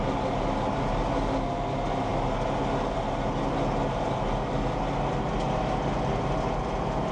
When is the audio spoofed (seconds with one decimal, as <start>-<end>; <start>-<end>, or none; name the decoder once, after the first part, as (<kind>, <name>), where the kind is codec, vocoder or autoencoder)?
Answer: none